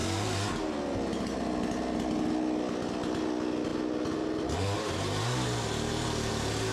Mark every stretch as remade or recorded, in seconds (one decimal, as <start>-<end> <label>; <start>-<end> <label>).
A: 0.0-6.7 recorded